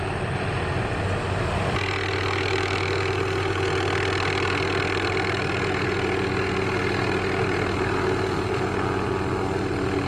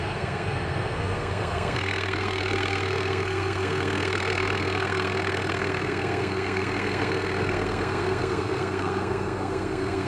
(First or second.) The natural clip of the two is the first